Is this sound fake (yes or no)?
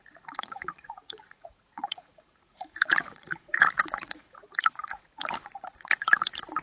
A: yes